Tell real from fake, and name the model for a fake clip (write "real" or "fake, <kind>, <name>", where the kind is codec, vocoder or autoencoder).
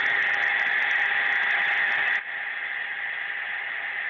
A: real